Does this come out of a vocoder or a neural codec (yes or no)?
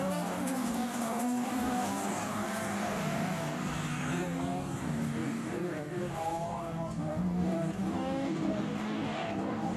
yes